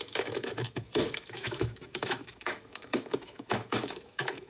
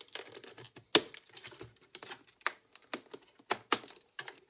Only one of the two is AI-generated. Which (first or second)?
first